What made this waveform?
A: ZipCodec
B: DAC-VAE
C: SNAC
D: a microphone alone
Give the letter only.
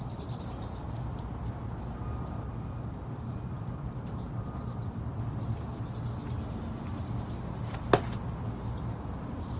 D